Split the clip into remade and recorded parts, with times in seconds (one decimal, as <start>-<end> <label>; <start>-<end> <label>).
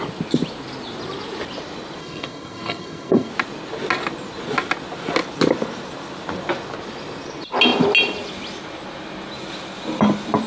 0.0-2.0 recorded; 2.0-3.3 remade; 3.3-10.5 recorded